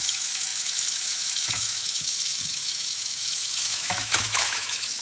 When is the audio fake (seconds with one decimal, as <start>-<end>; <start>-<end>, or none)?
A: 0.0-5.0